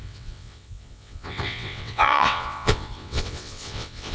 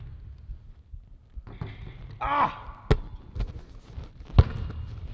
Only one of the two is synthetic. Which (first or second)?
first